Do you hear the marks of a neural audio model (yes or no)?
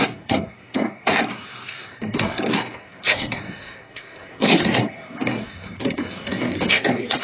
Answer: yes